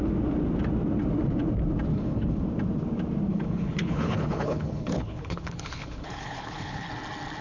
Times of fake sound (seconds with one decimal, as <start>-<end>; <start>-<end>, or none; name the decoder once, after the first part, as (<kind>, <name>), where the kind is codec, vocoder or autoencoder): 1.9-2.4 (codec, HILCodec); 3.3-6.9